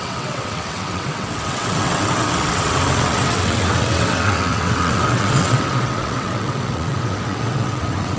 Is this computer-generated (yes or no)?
yes